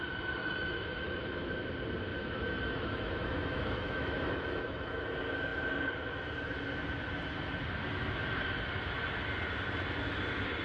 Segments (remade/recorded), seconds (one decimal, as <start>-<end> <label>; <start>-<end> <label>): 0.0-0.4 recorded; 0.4-1.5 remade; 1.5-2.1 recorded; 2.1-5.0 remade; 5.0-10.6 recorded